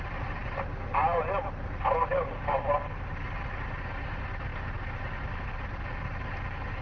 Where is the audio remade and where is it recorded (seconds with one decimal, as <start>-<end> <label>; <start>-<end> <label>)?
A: 0.0-6.8 recorded